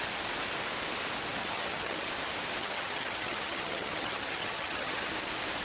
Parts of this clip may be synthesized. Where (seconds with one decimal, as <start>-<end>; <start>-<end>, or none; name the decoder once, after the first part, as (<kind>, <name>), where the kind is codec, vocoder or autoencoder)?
1.4-2.1 (vocoder, HiFi-GAN); 2.6-5.1